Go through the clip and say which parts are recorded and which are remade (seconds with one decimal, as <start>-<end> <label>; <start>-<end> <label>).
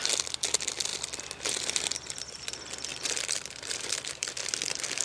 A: 0.0-0.9 recorded; 0.9-2.4 remade; 2.4-2.9 recorded; 2.9-4.3 remade; 4.3-5.0 recorded